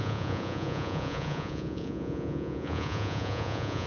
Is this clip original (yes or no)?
no